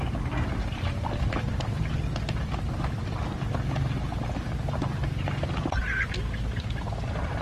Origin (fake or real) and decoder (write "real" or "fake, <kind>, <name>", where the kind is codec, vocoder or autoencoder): real